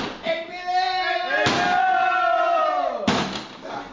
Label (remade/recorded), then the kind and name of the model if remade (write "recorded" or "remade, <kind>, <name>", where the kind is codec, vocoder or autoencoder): recorded